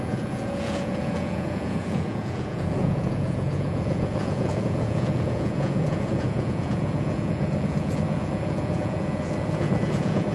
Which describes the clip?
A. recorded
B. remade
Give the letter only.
B